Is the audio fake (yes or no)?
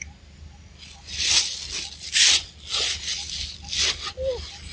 no